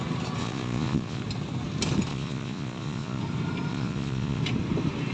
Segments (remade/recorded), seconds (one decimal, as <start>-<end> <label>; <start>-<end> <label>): 0.0-0.4 recorded; 0.4-1.2 remade; 1.2-2.1 recorded; 2.1-3.2 remade; 3.2-3.7 recorded; 3.7-4.4 remade; 4.4-5.1 recorded